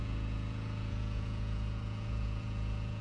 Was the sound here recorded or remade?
remade